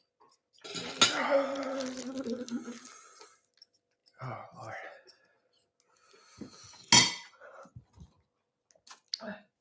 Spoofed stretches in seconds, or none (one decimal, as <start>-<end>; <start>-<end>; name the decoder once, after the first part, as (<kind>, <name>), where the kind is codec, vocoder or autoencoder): none